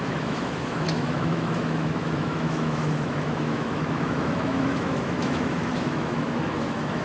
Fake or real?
fake